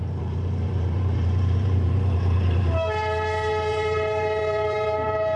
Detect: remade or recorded remade